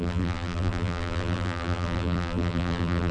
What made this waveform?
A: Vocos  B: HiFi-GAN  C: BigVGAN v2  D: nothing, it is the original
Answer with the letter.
C